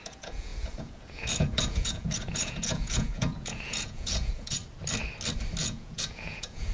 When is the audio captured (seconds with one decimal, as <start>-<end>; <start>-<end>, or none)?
4.6-5.6